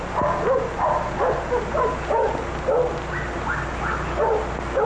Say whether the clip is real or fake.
real